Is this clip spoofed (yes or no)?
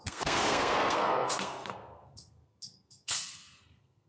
yes